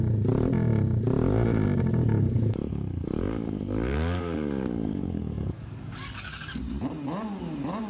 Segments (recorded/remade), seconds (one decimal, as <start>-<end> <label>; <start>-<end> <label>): 0.0-2.0 recorded; 2.0-6.6 remade; 6.6-7.9 recorded